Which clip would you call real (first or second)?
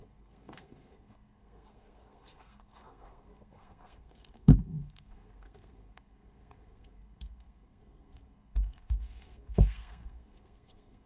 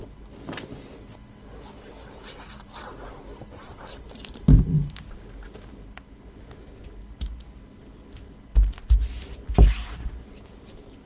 second